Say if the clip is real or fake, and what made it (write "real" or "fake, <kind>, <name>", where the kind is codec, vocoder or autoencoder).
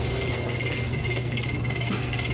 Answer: fake, codec, SNAC